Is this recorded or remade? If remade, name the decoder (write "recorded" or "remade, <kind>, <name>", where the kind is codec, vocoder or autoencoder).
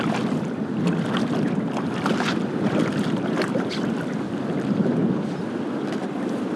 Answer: recorded